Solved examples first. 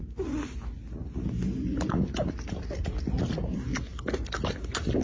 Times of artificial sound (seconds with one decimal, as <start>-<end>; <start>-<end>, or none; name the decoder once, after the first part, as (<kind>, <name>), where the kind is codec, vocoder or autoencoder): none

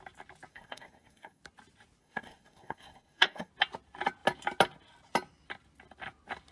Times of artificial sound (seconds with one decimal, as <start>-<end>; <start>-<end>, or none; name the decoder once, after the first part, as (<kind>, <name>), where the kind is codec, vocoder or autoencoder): 0.5-1.4 (codec, SNAC); 2.0-3.5

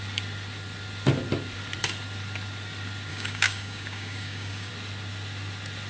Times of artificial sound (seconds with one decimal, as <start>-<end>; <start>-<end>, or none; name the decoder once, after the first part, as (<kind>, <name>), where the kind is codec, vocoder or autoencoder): 3.1-4.7 (codec, DAC)

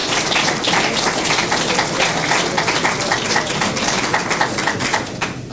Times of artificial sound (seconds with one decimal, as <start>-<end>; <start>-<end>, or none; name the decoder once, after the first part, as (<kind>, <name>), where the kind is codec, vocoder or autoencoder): none

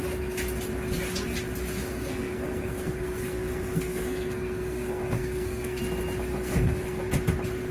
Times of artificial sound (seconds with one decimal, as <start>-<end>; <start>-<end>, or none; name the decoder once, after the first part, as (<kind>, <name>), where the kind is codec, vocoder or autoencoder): 1.8-5.8 (codec, SNAC); 6.3-7.1